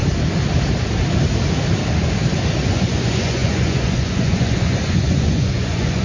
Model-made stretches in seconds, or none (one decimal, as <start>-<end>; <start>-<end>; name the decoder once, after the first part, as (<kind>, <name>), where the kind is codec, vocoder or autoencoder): 2.6-6.0 (vocoder, Vocos)